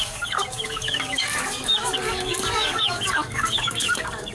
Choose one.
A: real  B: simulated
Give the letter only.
B